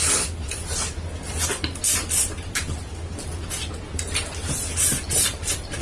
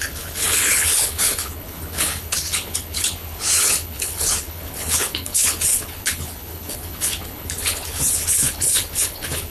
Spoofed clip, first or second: second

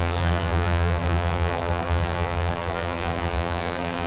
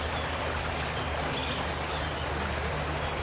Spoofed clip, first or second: first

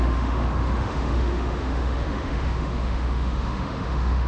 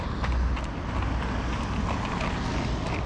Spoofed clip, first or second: first